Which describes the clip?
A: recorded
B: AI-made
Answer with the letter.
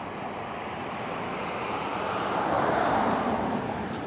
B